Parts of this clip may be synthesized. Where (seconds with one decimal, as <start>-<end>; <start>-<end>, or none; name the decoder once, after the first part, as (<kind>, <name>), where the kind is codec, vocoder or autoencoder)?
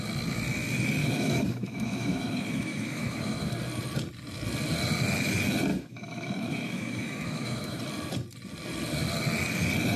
1.0-3.5 (autoencoder, DAC-VAE); 5.7-7.8